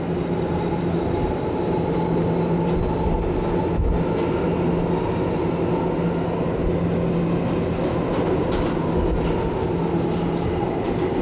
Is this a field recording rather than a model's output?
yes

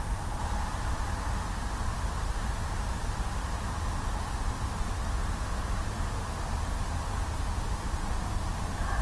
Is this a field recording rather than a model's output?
yes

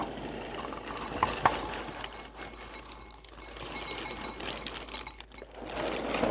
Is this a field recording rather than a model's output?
yes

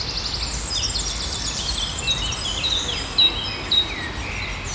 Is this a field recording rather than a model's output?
yes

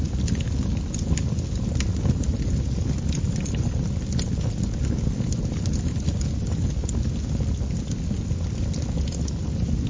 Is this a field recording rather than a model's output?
yes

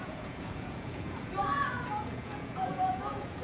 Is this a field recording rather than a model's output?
no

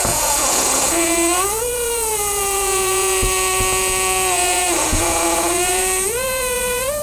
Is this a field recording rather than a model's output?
no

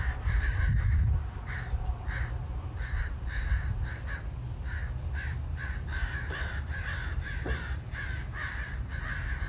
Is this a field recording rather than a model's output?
no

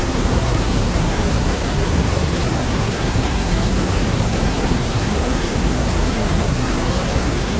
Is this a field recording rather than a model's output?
no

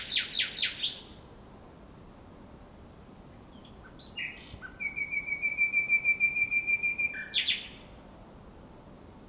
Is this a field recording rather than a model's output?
yes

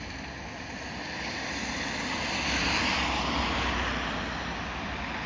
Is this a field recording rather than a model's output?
yes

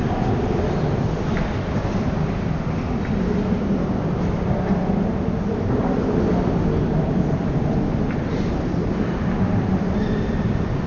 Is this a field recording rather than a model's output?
no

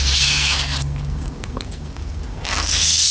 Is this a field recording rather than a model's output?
no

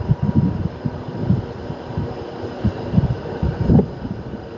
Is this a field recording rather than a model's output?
yes